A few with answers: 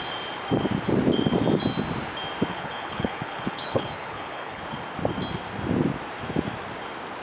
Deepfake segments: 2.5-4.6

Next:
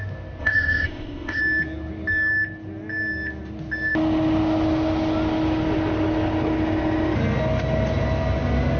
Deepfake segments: 0.4-1.4

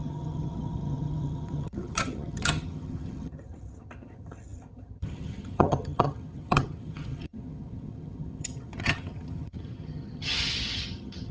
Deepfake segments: 0.0-11.3

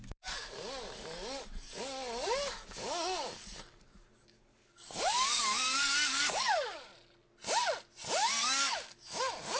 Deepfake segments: 0.0-6.9; 8.4-9.6

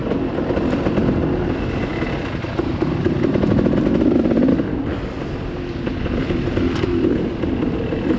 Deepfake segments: 1.2-1.9; 2.5-8.2

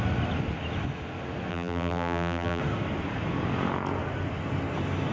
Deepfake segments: 1.5-2.6

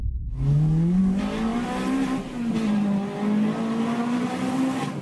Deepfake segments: 0.0-1.0

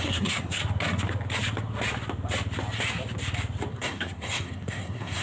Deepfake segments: 0.0-0.6; 3.7-5.2